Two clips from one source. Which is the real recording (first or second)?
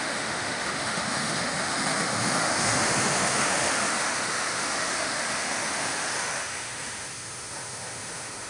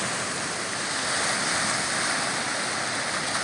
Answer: second